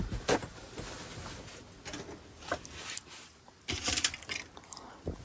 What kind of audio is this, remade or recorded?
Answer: recorded